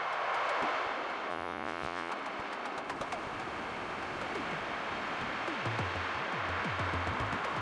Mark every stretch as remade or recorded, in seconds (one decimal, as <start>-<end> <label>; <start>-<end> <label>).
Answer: 0.0-1.3 recorded; 1.3-2.1 remade; 2.1-7.6 recorded